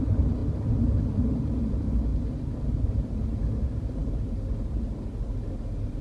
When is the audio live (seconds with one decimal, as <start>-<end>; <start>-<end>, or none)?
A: 0.4-1.2